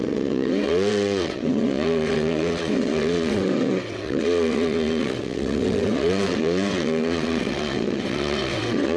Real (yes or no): no